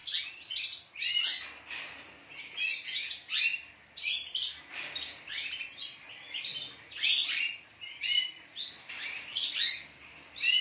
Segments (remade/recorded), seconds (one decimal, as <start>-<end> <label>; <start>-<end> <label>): 0.0-10.6 recorded